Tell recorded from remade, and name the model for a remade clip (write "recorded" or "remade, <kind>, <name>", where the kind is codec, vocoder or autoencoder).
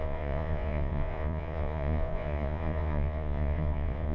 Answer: remade, vocoder, Vocos